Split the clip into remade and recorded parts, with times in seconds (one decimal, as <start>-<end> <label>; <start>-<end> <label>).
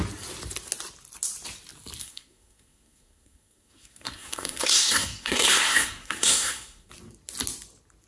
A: 0.0-2.0 recorded; 2.0-6.9 remade; 6.9-8.1 recorded